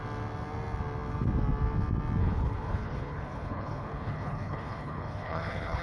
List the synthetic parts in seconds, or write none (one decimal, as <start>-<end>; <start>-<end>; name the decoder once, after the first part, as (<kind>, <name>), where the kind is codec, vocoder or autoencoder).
2.2-5.8 (codec, HILCodec)